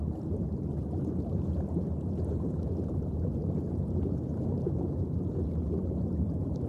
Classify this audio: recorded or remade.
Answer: remade